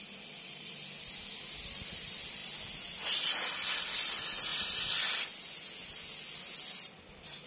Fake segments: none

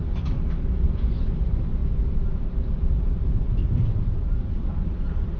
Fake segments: 1.8-5.0 (vocoder, BigVGAN v2)